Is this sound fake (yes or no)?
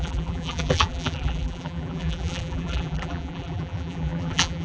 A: yes